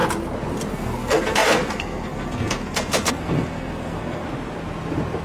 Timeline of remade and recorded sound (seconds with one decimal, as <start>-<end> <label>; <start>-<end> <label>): 0.0-0.7 recorded; 0.7-4.2 remade; 4.2-5.2 recorded